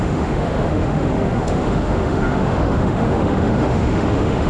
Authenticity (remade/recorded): remade